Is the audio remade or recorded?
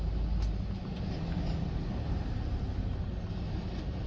recorded